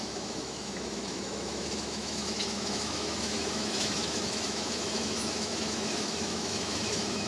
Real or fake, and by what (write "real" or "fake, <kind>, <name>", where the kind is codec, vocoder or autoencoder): fake, autoencoder, DAC-VAE